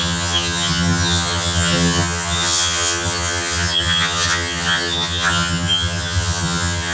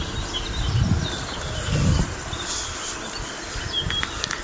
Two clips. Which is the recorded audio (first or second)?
second